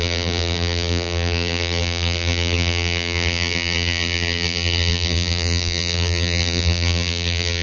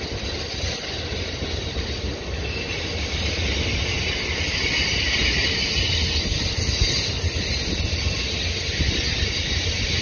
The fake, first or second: first